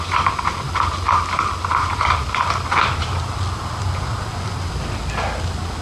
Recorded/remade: recorded